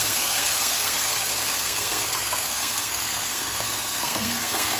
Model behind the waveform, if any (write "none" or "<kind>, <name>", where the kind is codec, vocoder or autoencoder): codec, SNAC